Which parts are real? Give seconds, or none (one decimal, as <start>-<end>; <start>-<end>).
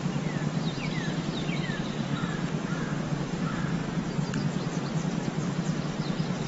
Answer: 2.1-2.7; 3.8-4.3